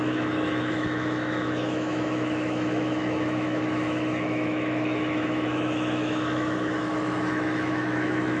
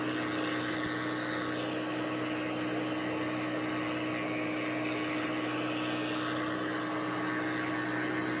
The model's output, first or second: first